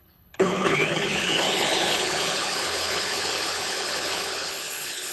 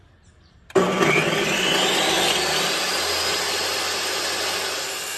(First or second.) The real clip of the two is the second